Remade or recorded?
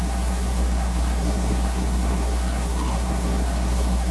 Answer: remade